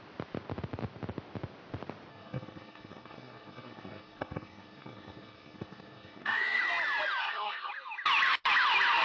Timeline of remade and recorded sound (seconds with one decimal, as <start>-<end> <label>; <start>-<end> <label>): 0.0-2.1 recorded; 2.1-6.6 remade; 6.6-7.2 recorded; 7.2-7.7 remade; 7.7-9.0 recorded